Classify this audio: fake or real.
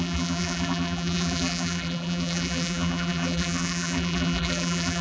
fake